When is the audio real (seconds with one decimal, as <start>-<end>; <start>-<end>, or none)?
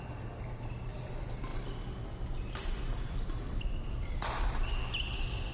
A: 0.0-5.5